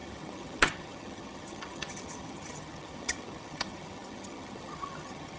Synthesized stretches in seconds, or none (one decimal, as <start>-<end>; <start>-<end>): 0.0-5.4